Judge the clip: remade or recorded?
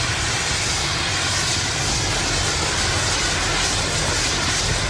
recorded